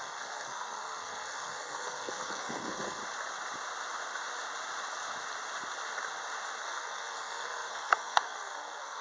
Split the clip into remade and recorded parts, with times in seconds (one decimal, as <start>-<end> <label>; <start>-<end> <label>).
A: 0.0-3.0 remade; 3.0-6.6 recorded; 6.6-9.0 remade